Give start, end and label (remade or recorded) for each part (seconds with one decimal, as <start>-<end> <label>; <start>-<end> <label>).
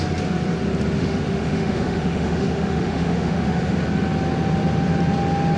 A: 0.0-1.0 recorded; 1.0-3.8 remade; 3.8-5.6 recorded